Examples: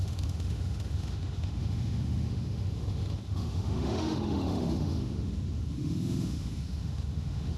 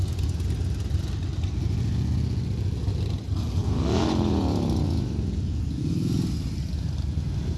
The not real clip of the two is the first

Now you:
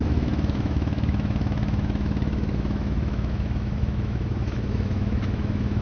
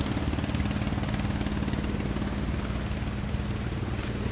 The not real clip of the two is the first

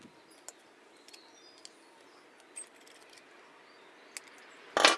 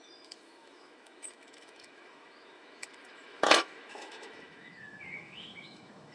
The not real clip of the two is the second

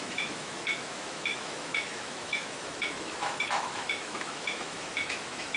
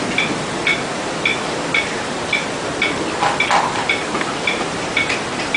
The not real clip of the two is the first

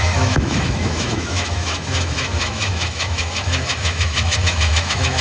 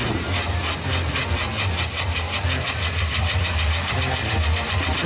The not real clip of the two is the first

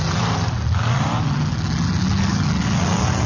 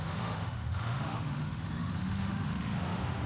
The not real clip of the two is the second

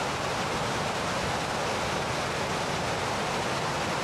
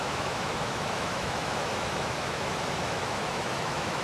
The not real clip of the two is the second